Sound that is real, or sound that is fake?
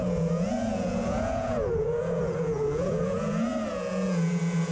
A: fake